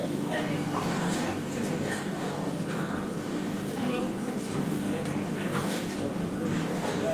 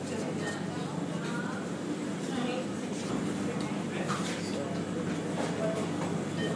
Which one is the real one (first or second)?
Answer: second